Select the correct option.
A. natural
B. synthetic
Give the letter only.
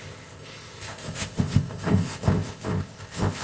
B